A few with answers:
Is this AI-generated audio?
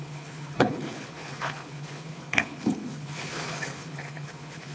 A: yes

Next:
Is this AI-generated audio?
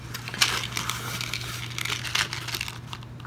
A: no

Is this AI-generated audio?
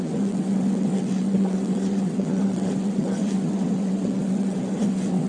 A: yes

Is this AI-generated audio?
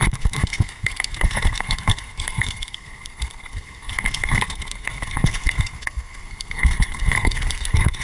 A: yes